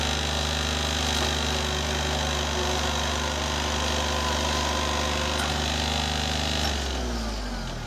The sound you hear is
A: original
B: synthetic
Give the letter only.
A